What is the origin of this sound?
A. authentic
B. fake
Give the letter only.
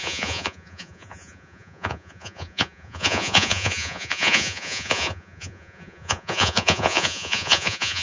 B